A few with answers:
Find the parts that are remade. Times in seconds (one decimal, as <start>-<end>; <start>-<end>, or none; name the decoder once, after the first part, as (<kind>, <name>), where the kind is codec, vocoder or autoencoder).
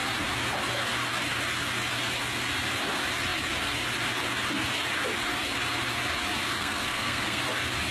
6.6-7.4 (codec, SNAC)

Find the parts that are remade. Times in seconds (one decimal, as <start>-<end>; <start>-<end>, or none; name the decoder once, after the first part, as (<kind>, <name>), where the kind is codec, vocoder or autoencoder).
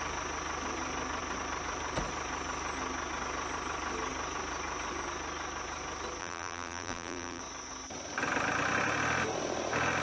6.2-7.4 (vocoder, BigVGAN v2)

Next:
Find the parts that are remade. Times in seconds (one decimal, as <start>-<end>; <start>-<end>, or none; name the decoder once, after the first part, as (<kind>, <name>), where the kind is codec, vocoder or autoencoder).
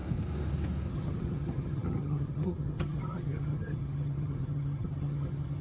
0.9-5.6 (vocoder, HiFi-GAN)